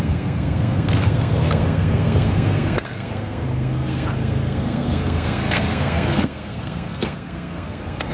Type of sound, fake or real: fake